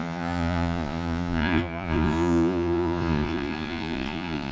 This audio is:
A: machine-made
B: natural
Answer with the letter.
A